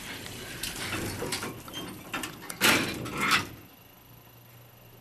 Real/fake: real